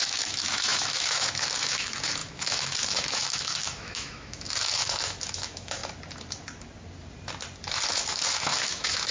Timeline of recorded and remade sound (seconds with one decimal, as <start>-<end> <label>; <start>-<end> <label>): 0.0-5.8 remade; 5.8-7.9 recorded; 7.9-9.1 remade